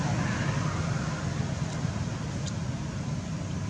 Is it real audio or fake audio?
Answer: real